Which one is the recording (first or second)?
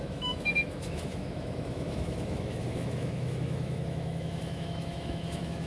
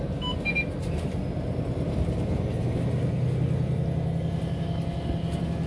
second